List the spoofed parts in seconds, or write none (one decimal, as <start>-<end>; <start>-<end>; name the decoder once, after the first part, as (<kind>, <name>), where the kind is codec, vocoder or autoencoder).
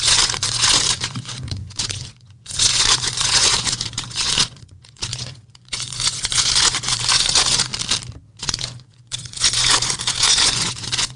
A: 0.0-7.7 (vocoder, Vocos); 8.4-11.2